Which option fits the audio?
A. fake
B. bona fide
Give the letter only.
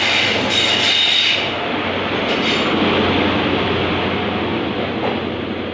B